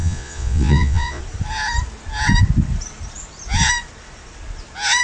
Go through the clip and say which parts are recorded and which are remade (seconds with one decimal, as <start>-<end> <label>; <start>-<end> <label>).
0.0-1.2 remade; 1.2-5.0 recorded